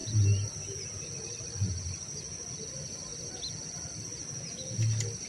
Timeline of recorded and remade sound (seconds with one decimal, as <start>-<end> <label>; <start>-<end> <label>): 0.0-5.3 recorded